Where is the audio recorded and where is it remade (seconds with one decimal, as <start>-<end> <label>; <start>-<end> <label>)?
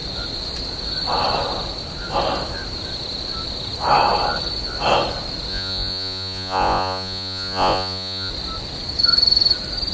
0.0-5.5 recorded; 5.5-8.3 remade; 8.3-9.9 recorded